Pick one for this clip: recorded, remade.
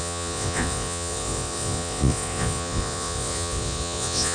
remade